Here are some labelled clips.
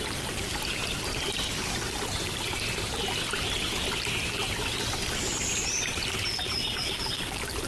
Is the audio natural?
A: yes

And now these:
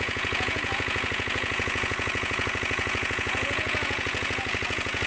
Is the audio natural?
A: no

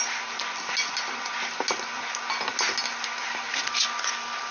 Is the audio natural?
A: yes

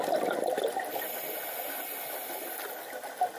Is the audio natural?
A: yes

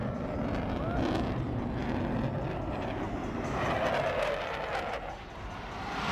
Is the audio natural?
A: yes